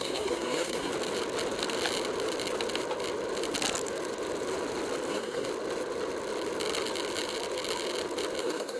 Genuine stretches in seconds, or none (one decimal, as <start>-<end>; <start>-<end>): 0.9-5.1; 5.5-8.4